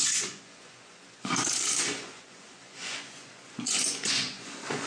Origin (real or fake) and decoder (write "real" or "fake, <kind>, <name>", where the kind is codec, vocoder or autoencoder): fake, vocoder, Vocos